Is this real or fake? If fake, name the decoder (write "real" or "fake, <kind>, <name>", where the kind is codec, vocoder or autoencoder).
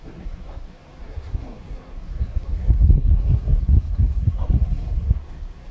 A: fake, codec, SNAC